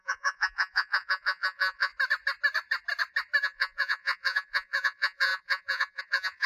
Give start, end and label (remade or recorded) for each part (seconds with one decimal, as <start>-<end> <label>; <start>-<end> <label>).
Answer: 0.0-1.9 remade; 1.9-3.4 recorded; 3.4-6.5 remade